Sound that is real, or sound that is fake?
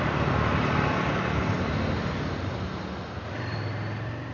real